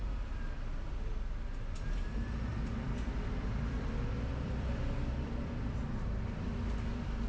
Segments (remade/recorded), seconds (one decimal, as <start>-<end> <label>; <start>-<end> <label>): 0.0-0.9 remade; 0.9-2.5 recorded; 2.5-7.3 remade